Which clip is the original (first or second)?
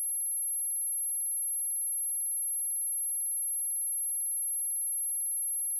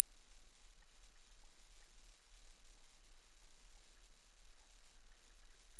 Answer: first